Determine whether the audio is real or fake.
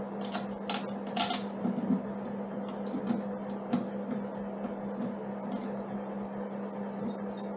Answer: real